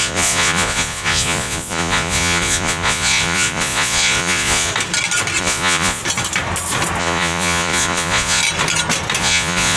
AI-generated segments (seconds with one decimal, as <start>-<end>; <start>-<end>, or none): 0.0-4.7; 5.4-6.0; 7.0-8.4; 9.2-9.8